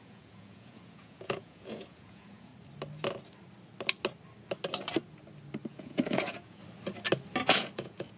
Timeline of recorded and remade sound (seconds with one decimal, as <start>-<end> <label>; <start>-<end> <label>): 0.0-2.5 remade; 2.5-5.7 recorded; 5.7-6.6 remade; 6.6-7.5 recorded; 7.5-8.2 remade